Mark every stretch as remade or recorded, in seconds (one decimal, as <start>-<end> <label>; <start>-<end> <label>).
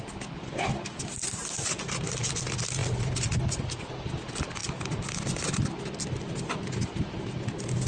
0.0-7.9 recorded